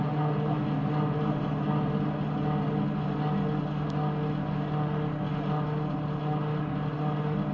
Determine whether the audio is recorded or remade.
recorded